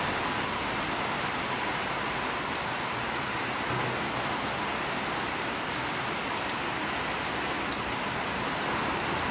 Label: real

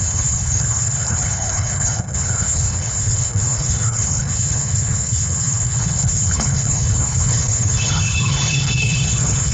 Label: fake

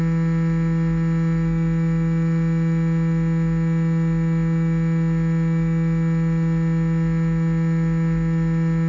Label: real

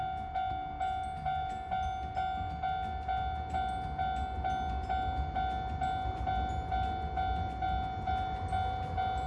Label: real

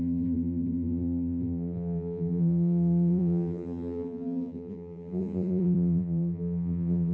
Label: fake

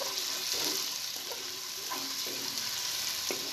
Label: real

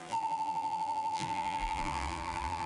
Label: fake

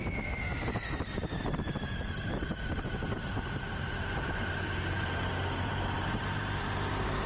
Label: fake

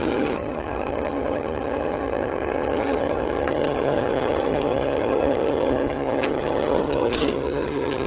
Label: fake